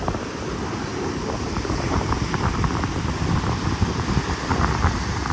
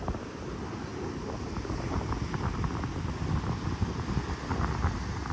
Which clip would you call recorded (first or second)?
second